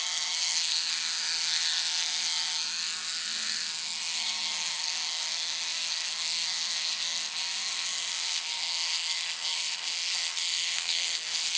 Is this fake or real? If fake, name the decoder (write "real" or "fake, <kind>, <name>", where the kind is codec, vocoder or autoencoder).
fake, codec, SNAC